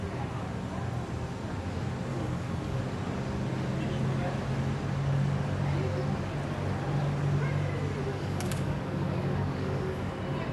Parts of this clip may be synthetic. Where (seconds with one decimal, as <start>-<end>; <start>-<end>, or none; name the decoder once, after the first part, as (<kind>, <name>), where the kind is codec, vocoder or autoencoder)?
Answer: 2.1-2.8 (codec, DAC); 8.1-10.1